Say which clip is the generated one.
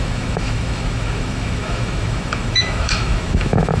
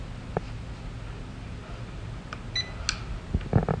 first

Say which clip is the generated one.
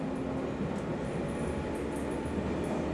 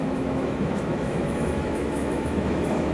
second